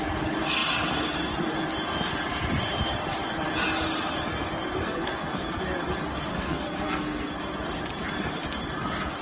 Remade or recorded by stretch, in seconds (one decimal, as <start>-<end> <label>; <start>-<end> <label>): 0.0-4.8 recorded; 4.8-5.6 remade; 5.6-6.3 recorded; 6.3-7.3 remade; 7.3-9.2 recorded